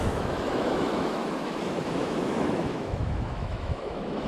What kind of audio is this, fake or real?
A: fake